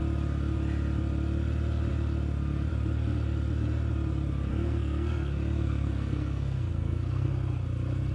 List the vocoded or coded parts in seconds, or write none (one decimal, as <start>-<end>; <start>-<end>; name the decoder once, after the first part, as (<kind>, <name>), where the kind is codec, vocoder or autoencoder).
4.5-7.3 (codec, SNAC)